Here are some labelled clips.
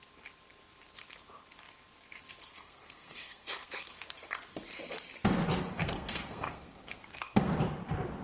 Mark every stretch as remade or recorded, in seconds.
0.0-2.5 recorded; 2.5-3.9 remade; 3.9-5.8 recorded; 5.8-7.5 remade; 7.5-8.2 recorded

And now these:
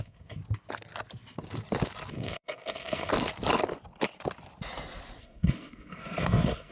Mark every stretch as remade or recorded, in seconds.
0.0-0.4 remade; 0.4-2.1 recorded; 2.1-3.1 remade; 3.1-5.2 recorded; 5.2-6.7 remade

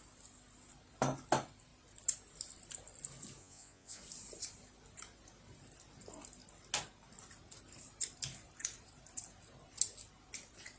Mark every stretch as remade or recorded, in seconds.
0.0-3.4 recorded; 3.4-4.0 remade; 4.0-10.8 recorded